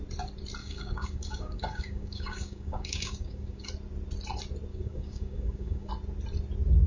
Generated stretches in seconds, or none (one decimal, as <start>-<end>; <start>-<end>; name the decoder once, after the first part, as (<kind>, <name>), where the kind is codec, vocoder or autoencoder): 0.6-3.7 (codec, DAC); 4.7-5.9